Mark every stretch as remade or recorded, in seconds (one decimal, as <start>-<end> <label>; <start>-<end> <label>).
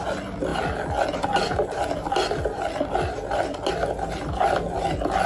0.0-5.3 recorded